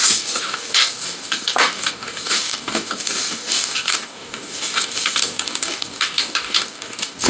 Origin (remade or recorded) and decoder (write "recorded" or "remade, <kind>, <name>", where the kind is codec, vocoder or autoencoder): remade, codec, DAC